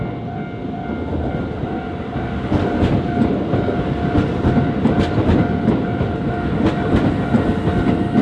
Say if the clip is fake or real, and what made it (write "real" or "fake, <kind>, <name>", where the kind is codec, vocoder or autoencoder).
real